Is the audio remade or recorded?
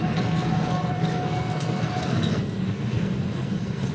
remade